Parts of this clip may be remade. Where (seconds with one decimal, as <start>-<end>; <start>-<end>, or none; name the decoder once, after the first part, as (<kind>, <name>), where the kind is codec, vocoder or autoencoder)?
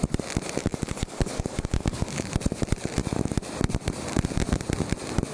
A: 0.6-2.3 (codec, DAC)